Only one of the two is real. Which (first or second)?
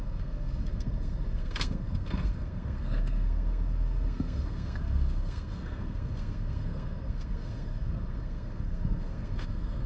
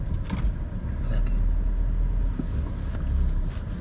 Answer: second